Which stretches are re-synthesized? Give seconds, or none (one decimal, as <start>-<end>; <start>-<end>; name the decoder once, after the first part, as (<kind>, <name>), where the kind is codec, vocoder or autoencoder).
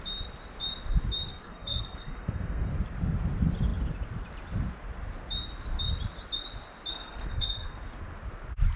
1.3-2.7 (codec, SNAC); 6.9-7.8